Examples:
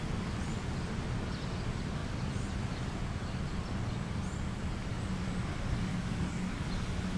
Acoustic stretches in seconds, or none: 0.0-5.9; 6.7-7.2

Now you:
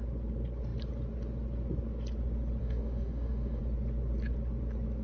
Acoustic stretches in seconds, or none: 0.0-2.6; 3.6-5.0

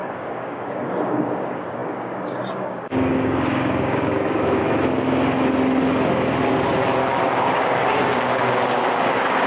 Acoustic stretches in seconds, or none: 4.6-7.2